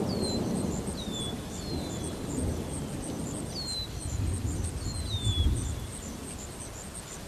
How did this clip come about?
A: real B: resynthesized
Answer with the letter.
A